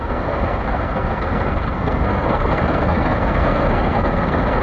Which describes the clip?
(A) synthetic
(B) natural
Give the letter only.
A